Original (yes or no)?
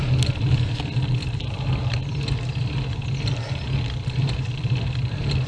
yes